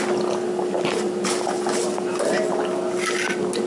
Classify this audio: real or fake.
real